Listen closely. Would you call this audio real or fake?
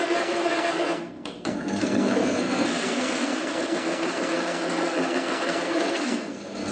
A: fake